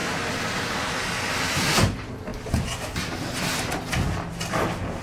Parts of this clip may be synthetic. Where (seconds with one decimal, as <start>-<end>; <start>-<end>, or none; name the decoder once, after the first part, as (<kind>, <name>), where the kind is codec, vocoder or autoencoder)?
none